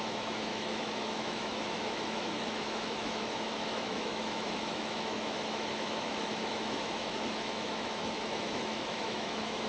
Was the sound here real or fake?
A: fake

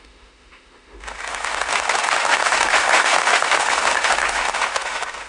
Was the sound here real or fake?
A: fake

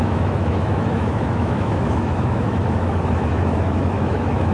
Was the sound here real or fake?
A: fake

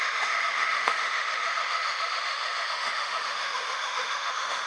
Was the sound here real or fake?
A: fake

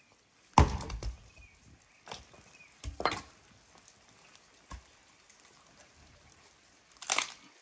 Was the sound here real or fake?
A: real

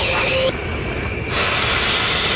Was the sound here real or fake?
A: real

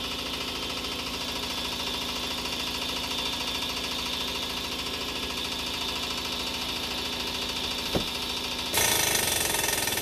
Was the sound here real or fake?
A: real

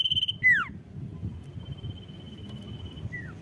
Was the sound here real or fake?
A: real